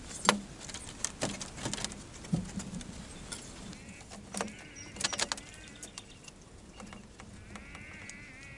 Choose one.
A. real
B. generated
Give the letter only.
A